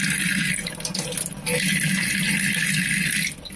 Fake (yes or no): no